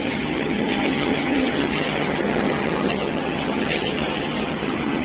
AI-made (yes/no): yes